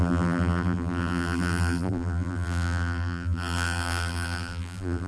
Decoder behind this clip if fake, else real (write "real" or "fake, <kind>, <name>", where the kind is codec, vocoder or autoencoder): fake, vocoder, BigVGAN v2